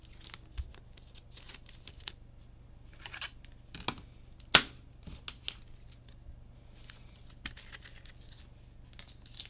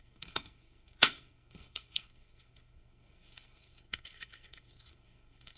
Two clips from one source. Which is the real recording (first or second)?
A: first